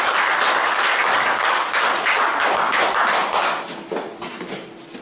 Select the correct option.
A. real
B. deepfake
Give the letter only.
A